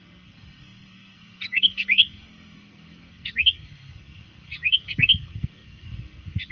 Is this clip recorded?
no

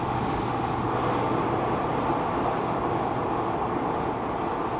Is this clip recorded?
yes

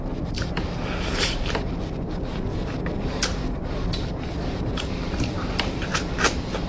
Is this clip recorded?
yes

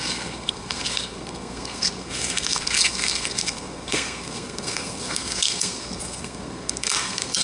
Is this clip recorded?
no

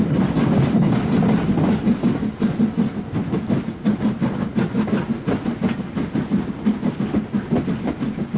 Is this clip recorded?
yes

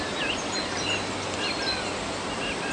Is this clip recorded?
yes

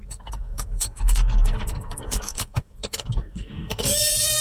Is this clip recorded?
no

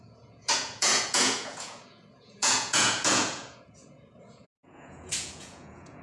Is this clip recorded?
no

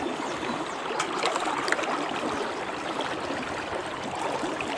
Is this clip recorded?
yes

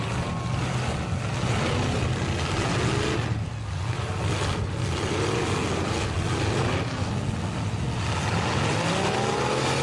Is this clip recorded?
yes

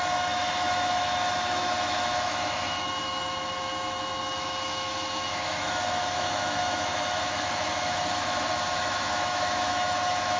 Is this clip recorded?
no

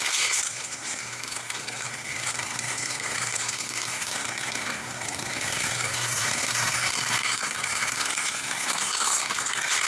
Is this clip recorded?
no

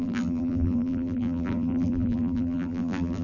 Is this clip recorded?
no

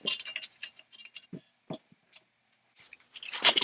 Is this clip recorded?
yes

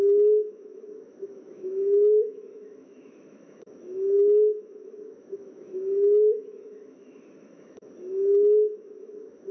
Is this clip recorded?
no